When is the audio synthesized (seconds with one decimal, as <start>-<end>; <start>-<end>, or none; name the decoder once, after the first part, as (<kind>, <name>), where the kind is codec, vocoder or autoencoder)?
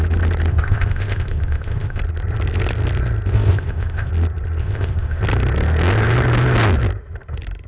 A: 0.5-2.0 (codec, ZipCodec); 3.3-4.1; 4.6-5.2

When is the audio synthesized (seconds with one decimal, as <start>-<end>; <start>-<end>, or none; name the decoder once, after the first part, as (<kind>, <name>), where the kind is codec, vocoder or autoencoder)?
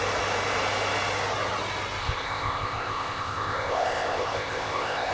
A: 2.0-5.1 (codec, ZipCodec)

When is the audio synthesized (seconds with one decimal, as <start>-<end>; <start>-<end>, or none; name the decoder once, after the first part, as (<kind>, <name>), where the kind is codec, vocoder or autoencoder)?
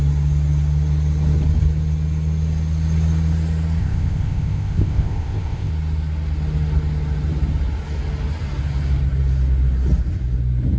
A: 3.8-5.7 (codec, ZipCodec)